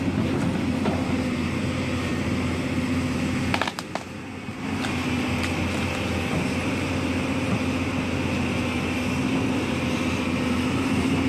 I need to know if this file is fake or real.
real